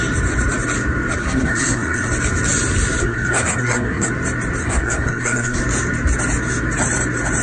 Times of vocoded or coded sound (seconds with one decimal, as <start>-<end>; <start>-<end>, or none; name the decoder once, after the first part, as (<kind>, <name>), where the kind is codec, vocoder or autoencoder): 1.2-2.1 (codec, SNAC); 3.0-4.1; 4.6-5.6